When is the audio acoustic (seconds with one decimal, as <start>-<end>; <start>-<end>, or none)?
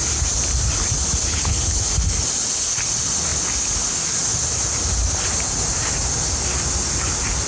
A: 0.0-1.3; 1.9-7.5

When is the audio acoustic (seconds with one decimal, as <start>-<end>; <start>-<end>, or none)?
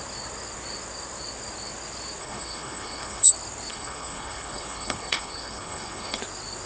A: 0.0-2.2; 3.3-3.7; 6.2-6.7